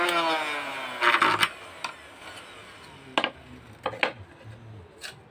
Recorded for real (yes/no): yes